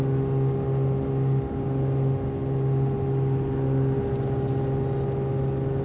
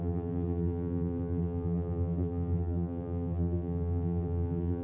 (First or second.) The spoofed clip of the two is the second